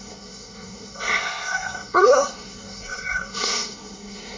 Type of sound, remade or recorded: remade